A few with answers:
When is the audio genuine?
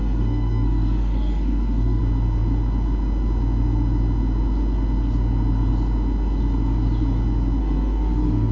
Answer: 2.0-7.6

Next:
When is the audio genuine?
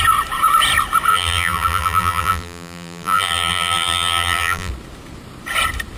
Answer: 0.0-1.1; 4.7-6.0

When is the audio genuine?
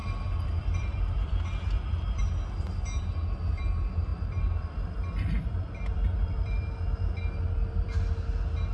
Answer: 2.2-4.1; 8.0-8.7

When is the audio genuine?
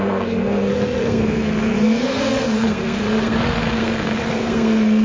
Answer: none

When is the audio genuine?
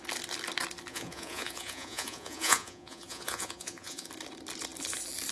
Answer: 0.0-0.9; 4.1-5.3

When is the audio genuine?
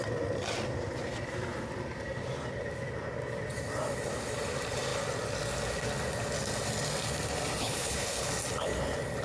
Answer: 0.0-7.6; 8.3-9.2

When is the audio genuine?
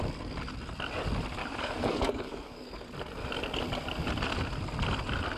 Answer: 0.0-1.4; 2.7-5.4